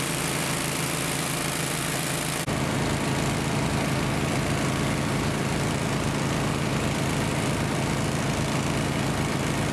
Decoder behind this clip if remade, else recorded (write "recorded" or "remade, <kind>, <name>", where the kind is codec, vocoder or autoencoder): recorded